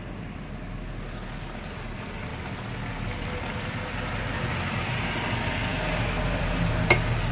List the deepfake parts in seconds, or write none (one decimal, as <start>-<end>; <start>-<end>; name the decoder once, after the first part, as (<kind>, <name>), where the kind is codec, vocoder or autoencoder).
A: none